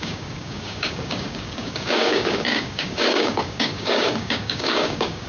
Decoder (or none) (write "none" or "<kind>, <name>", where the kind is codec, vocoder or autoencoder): codec, DAC